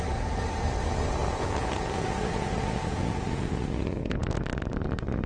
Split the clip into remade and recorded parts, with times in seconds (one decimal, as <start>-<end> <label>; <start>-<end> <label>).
0.0-1.2 recorded; 1.2-4.4 remade; 4.4-5.3 recorded